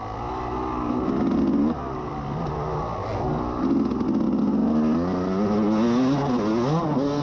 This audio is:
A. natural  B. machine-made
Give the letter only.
A